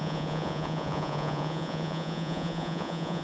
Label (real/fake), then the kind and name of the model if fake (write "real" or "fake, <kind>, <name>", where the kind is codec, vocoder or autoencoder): fake, vocoder, Vocos